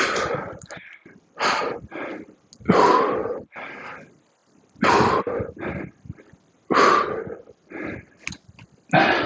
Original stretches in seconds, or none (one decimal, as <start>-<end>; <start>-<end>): 0.0-9.3